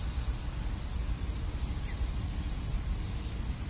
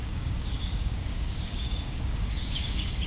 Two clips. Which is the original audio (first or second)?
first